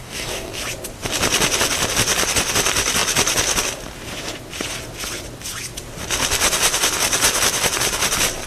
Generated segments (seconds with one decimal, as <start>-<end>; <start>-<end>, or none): 0.0-0.6